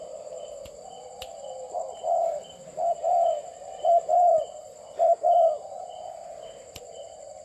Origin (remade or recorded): recorded